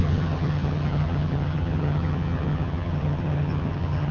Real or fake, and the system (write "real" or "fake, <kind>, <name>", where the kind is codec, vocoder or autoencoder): fake, vocoder, HiFi-GAN